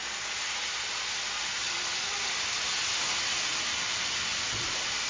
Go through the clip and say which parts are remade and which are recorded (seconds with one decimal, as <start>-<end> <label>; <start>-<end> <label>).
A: 0.0-5.1 recorded